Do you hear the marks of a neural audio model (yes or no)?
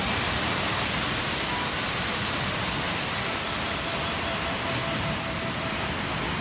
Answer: no